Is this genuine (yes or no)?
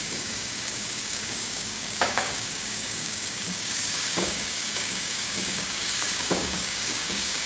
no